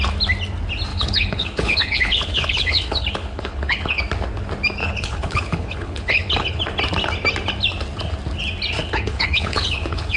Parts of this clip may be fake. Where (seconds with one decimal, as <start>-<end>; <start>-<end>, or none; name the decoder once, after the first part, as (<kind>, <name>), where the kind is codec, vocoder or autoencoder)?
0.9-4.0 (codec, HILCodec); 4.8-6.6; 8.8-10.2